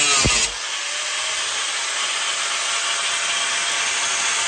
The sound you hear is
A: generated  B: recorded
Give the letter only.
B